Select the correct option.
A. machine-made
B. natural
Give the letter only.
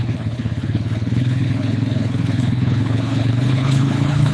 A